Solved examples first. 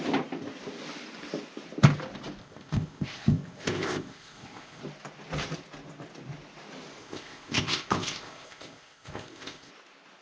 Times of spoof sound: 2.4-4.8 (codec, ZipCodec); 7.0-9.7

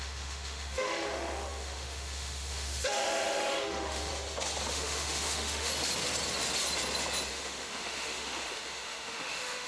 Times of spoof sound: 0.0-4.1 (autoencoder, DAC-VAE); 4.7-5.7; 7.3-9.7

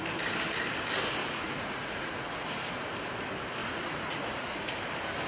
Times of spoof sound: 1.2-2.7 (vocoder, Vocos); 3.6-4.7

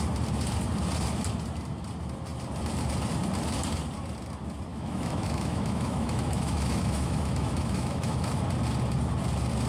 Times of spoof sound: 4.7-8.4 (autoencoder, DAC-VAE)

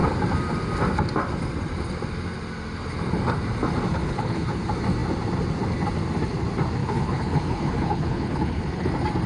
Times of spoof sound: 3.9-4.6 (codec, HILCodec); 6.8-8.9